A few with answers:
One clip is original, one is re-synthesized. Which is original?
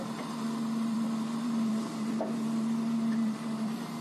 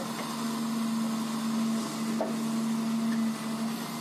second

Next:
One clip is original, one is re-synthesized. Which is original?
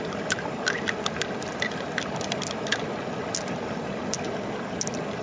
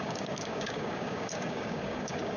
first